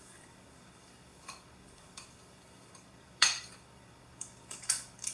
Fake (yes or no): yes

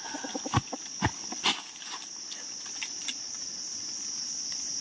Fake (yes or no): no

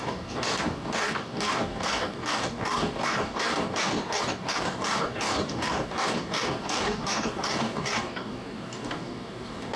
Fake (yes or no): yes